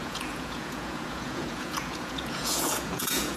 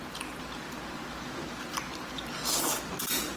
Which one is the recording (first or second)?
second